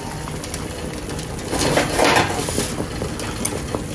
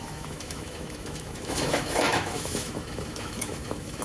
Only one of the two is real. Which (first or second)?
first